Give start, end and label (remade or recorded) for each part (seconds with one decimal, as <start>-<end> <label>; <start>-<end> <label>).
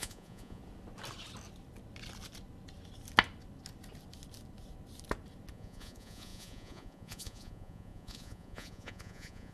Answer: 0.0-0.6 remade; 0.6-5.5 recorded; 5.5-9.5 remade